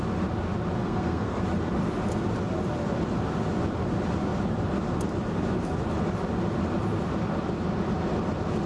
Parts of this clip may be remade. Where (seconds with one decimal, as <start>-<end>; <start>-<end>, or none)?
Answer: 0.8-1.4